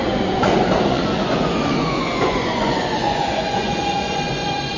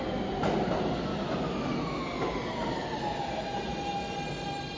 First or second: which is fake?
first